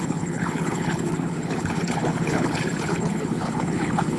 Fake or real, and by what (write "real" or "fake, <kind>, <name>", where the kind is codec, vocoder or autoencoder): fake, codec, HILCodec